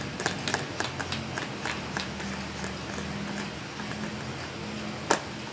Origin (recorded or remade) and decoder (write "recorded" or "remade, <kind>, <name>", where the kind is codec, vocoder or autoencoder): recorded